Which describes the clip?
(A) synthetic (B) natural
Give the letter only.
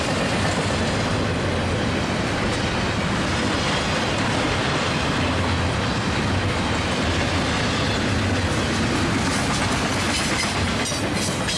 B